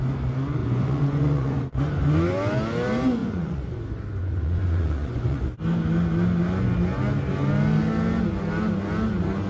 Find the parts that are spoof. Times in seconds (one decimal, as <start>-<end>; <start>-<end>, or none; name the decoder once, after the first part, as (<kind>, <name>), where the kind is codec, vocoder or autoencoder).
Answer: 0.6-1.8 (vocoder, Vocos); 3.2-3.8; 4.2-5.4